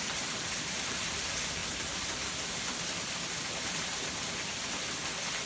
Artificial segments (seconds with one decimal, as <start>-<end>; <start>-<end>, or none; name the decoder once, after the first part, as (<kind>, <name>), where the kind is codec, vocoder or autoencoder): none